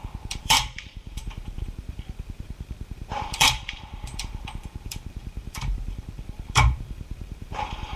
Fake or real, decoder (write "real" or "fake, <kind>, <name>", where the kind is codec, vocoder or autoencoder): fake, vocoder, BigVGAN v2